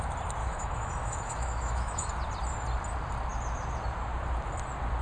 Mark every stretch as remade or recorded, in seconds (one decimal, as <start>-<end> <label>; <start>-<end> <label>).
0.0-0.4 recorded; 0.4-2.1 remade; 2.1-5.0 recorded